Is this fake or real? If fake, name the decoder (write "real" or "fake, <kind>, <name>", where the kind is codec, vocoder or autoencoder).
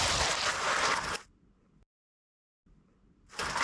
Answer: real